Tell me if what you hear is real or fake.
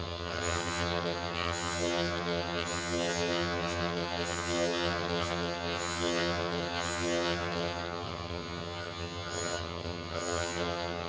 fake